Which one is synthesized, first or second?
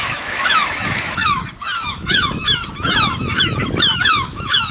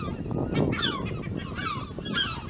first